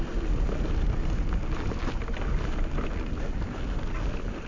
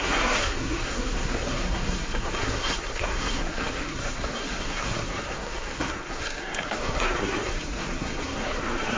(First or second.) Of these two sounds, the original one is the first